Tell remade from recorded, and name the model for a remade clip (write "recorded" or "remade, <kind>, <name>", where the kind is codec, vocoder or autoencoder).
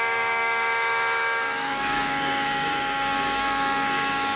remade, codec, DAC